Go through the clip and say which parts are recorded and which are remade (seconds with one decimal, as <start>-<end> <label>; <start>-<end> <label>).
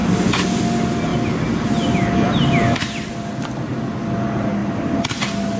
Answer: 0.0-5.6 recorded